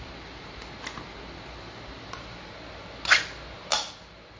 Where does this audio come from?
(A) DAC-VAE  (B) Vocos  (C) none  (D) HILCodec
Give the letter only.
C